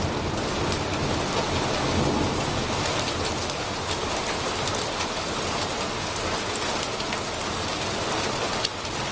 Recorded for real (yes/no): yes